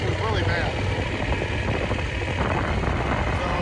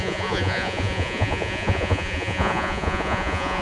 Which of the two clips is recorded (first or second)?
first